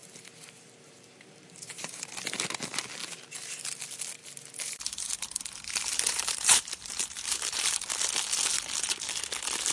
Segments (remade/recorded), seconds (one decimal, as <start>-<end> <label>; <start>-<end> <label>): 0.0-2.1 remade; 2.1-3.0 recorded; 3.0-3.6 remade; 3.6-4.2 recorded; 4.2-7.8 remade; 7.8-9.7 recorded